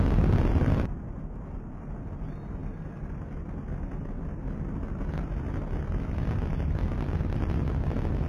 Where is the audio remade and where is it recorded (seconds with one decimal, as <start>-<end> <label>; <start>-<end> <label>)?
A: 0.0-8.3 recorded